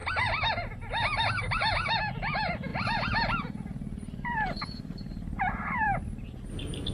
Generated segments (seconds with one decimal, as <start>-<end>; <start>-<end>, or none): 0.0-2.0; 2.7-4.6